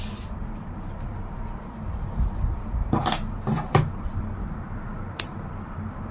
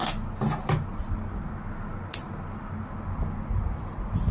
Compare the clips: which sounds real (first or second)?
second